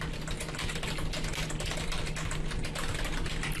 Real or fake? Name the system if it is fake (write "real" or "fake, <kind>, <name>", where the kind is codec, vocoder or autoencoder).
real